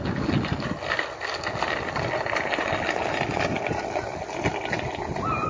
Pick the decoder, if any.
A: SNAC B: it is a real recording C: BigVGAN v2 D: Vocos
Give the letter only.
B